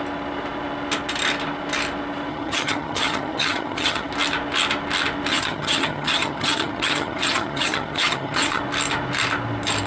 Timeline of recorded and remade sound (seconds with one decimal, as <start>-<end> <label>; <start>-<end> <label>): 0.0-2.3 recorded; 2.3-4.1 remade; 4.1-5.3 recorded; 5.3-8.6 remade; 8.6-9.9 recorded